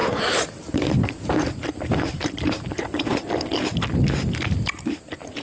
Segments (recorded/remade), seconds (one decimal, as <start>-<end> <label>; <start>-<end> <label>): 0.0-3.2 remade; 3.2-5.4 recorded